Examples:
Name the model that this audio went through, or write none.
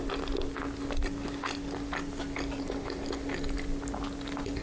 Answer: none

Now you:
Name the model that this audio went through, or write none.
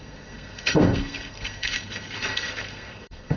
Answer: codec, SNAC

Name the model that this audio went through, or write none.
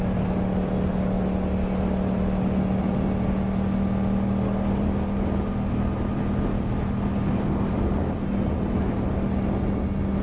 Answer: none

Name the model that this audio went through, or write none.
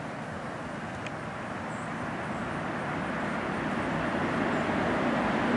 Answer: none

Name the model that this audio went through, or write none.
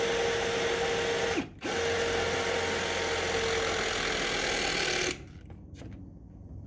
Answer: none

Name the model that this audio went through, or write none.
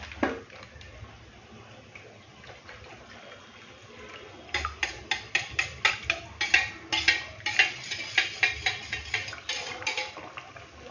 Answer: none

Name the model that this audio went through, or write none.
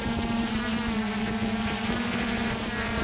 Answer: none